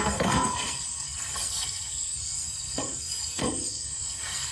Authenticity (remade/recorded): remade